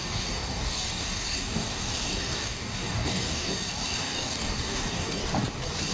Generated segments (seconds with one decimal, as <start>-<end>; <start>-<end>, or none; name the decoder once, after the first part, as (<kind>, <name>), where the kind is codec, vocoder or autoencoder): 0.0-3.5 (codec, DAC); 4.0-5.2